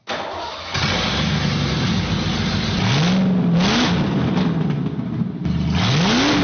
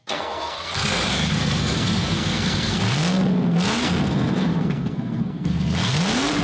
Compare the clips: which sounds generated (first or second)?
second